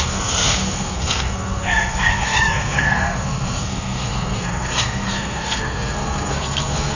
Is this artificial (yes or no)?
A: yes